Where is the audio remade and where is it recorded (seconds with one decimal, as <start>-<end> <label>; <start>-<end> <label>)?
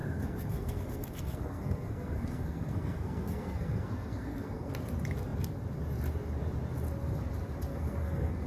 0.0-4.7 remade; 4.7-7.7 recorded; 7.7-8.5 remade